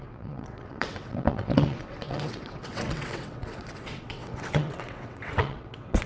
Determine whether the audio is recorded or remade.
remade